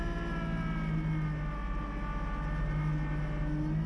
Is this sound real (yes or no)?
yes